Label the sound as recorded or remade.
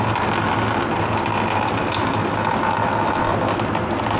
recorded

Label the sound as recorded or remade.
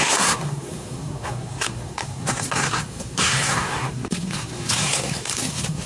remade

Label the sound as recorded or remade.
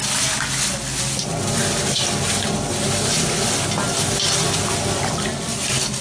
recorded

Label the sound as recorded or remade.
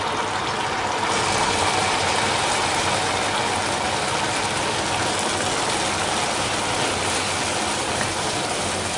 recorded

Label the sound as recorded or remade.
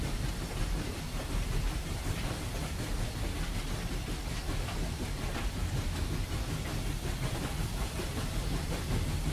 recorded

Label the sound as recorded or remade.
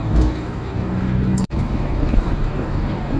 remade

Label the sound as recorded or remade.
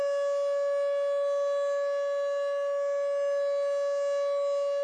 recorded